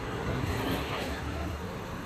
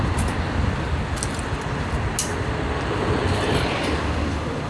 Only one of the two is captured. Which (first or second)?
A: second